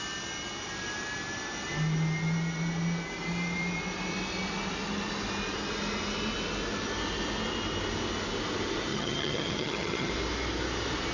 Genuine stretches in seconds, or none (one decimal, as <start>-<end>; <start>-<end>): 0.0-8.9; 10.1-11.1